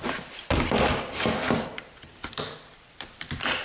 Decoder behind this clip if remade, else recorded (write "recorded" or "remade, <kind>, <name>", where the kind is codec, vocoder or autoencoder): remade, vocoder, BigVGAN v2